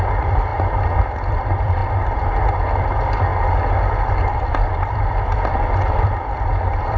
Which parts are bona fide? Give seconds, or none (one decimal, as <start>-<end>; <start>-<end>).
0.5-1.3; 1.8-2.6; 3.3-4.1